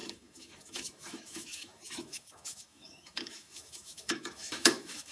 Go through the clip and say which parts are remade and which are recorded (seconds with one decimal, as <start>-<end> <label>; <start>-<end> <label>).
0.0-5.1 remade